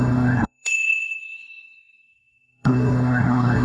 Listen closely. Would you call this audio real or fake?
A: fake